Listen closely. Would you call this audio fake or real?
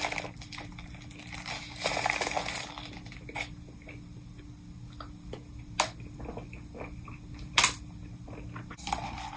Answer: real